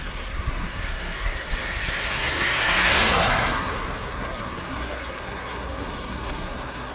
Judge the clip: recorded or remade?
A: remade